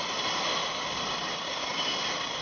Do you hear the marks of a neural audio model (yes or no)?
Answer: no